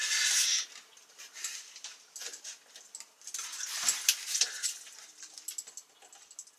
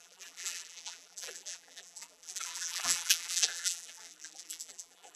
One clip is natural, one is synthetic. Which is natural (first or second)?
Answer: first